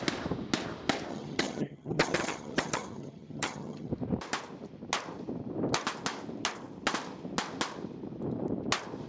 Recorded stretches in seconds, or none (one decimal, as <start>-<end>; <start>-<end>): 0.0-1.1; 3.9-9.1